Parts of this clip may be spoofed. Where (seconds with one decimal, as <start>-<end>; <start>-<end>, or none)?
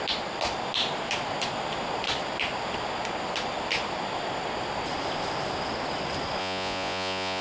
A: 6.4-7.4